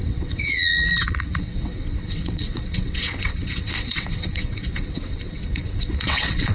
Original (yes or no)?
no